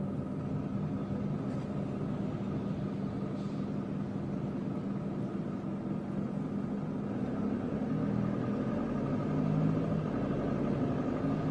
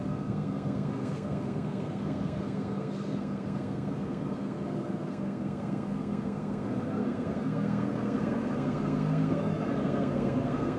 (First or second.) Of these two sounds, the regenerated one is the second